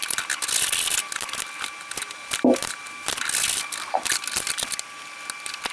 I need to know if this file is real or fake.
real